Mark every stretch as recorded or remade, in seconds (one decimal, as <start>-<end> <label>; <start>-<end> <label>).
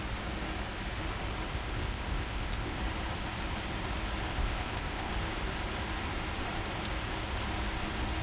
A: 0.0-1.5 recorded; 1.5-2.8 remade; 2.8-4.3 recorded; 4.3-5.1 remade; 5.1-8.2 recorded